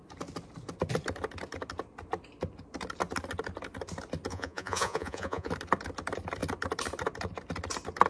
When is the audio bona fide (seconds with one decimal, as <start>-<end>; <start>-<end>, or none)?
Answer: 0.0-4.3; 5.5-8.1